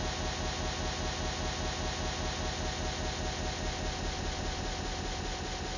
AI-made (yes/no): no